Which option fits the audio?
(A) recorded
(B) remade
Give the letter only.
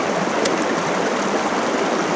A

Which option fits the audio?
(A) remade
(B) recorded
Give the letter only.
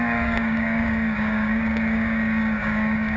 A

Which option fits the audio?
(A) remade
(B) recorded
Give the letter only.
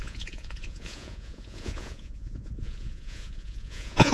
A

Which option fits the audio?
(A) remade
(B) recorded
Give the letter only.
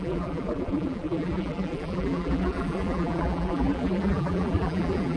A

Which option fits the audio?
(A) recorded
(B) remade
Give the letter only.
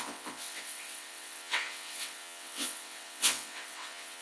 B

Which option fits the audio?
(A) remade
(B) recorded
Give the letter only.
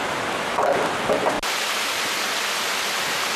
B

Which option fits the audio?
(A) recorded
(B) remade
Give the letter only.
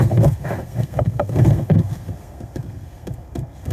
B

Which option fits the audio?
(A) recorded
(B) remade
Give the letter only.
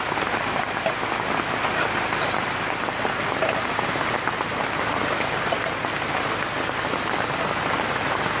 A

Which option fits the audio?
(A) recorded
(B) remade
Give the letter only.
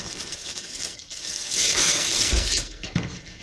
B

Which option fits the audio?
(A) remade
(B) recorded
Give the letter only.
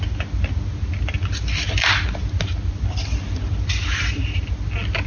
B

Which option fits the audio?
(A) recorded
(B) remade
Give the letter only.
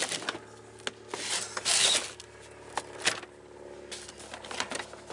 A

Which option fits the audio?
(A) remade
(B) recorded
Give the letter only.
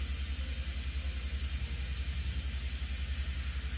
B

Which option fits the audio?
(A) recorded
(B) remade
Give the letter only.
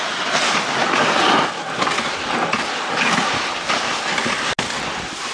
A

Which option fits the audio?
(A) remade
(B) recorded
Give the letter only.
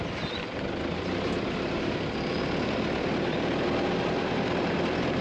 B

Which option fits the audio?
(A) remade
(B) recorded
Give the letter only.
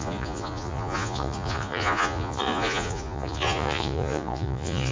A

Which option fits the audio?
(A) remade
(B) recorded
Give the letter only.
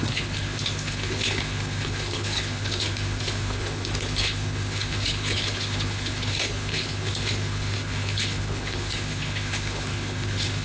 A